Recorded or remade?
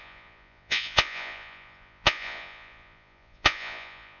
remade